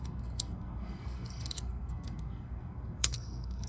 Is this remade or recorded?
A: remade